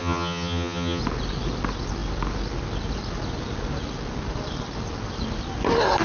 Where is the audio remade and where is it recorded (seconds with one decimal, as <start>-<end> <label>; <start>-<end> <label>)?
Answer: 0.0-1.0 remade; 1.0-6.0 recorded